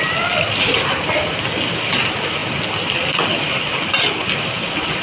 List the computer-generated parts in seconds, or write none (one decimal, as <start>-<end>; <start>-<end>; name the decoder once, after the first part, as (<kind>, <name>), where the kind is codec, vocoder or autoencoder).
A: none